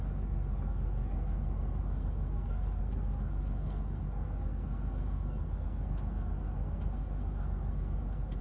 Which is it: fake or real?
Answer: fake